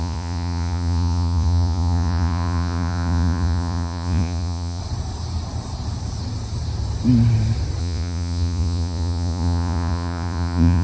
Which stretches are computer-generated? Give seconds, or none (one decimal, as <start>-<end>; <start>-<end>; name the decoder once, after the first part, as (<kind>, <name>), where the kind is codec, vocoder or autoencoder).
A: 0.0-4.8 (vocoder, Vocos); 7.8-10.8